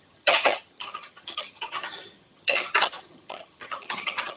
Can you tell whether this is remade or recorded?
remade